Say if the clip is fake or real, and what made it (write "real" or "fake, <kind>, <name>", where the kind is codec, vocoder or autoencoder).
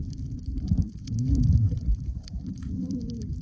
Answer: fake, vocoder, BigVGAN v2